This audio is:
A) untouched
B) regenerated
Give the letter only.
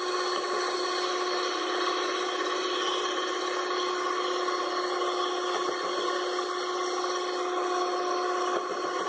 A